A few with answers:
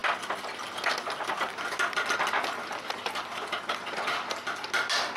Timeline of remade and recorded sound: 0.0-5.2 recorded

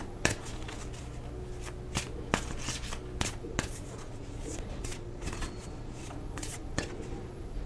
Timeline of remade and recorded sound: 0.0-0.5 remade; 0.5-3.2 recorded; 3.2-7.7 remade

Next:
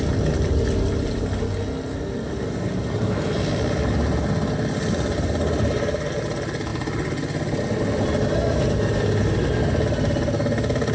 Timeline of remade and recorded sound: 0.0-10.9 recorded

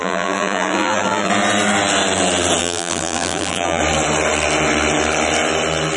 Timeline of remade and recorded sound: 0.0-1.3 remade; 1.3-2.6 recorded; 2.6-3.8 remade; 3.8-6.0 recorded

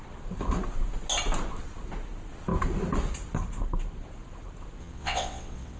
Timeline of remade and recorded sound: 0.0-4.8 recorded; 4.8-5.8 remade

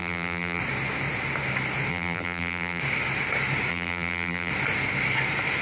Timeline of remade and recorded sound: 0.0-0.6 remade; 0.6-1.9 recorded; 1.9-2.8 remade; 2.8-3.7 recorded; 3.7-4.5 remade; 4.5-5.6 recorded

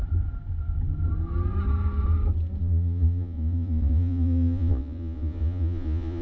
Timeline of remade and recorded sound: 0.0-2.6 recorded; 2.6-6.2 remade